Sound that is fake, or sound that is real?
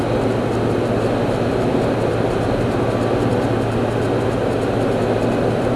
real